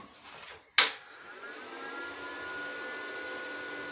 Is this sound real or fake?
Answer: real